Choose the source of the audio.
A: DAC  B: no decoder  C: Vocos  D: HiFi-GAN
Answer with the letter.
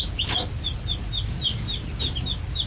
B